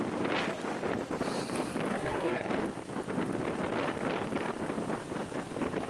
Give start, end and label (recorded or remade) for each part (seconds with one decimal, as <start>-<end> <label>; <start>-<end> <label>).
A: 0.0-1.9 recorded; 1.9-2.5 remade; 2.5-5.9 recorded